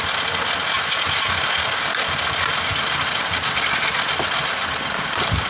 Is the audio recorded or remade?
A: recorded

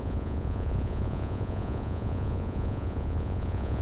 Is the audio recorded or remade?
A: remade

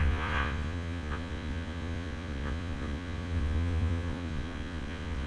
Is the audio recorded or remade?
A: remade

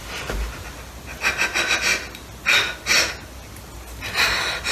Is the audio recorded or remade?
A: recorded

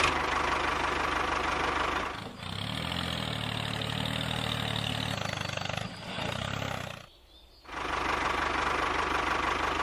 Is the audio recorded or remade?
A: recorded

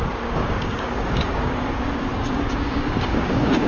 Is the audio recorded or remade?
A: remade